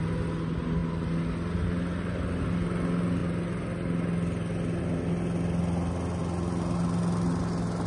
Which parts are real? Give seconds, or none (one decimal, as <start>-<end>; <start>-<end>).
0.0-7.9

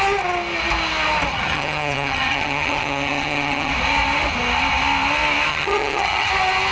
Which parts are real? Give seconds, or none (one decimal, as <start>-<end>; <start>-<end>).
0.0-1.3; 3.7-5.5; 6.3-6.7

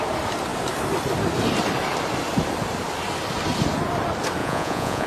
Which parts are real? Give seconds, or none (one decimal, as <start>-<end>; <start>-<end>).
0.0-4.4

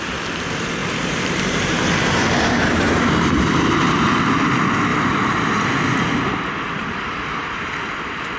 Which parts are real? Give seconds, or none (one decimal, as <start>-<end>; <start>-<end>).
0.0-0.8; 3.9-4.9; 5.7-6.8; 7.7-8.4